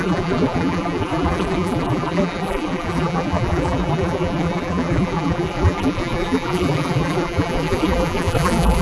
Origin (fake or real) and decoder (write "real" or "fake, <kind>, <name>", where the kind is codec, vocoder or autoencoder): fake, vocoder, BigVGAN v2